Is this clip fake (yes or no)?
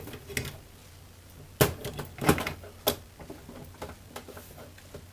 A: no